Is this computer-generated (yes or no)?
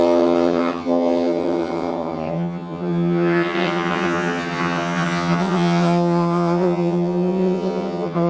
yes